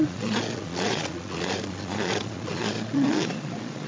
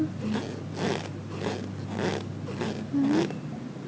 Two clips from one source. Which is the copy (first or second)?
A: first